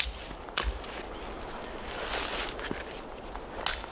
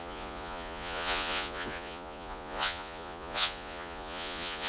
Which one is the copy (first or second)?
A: second